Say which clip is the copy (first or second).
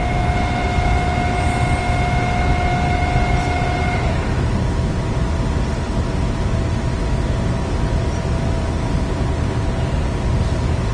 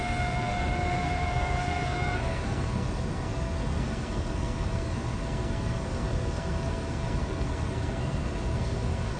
second